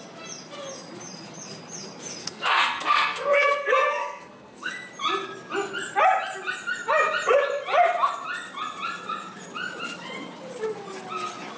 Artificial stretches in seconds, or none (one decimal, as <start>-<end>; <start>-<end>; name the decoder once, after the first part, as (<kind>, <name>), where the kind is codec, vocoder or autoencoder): 2.2-4.7 (codec, SNAC)